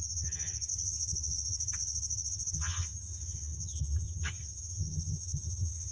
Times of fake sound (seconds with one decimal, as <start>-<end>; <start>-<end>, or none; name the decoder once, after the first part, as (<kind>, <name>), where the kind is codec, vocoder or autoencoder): 0.0-5.9 (vocoder, HiFi-GAN)